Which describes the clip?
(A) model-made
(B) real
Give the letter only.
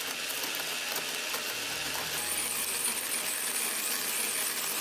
B